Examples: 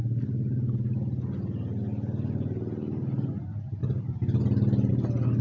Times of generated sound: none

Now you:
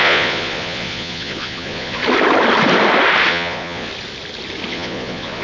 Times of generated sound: 0.0-2.0 (vocoder, Vocos); 3.3-3.9; 4.7-5.4

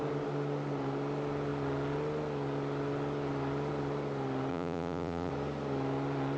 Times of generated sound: 4.5-5.3 (vocoder, Vocos)

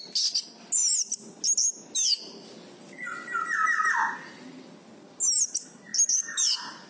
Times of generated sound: none

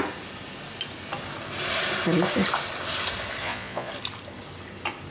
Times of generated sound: 3.4-3.9 (vocoder, Vocos)